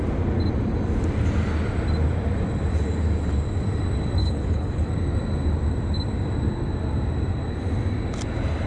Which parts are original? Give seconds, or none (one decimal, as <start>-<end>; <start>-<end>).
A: 0.0-4.2; 4.9-8.7

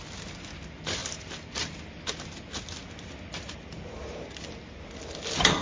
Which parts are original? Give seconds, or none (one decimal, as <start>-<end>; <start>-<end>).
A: 0.0-5.6

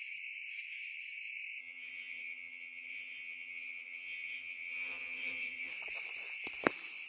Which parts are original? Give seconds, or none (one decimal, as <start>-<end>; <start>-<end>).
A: 0.0-1.6; 5.7-7.1

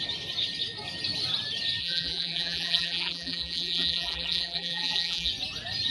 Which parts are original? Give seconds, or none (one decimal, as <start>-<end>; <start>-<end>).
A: 0.0-1.8; 5.3-5.9

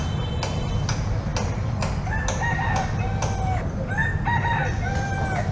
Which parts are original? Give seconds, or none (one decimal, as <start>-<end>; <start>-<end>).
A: 0.0-5.5